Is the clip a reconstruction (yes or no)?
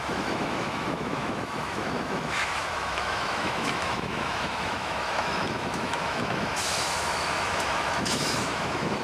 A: yes